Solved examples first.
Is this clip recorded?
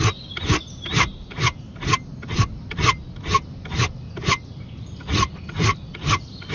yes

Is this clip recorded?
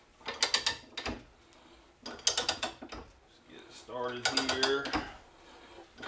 yes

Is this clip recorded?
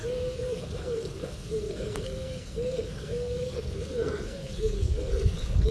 no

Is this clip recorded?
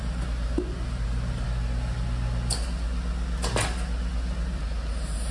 yes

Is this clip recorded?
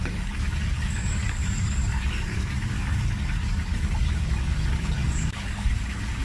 no